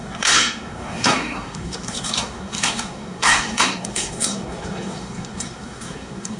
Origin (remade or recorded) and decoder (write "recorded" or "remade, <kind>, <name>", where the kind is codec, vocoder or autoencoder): remade, codec, SNAC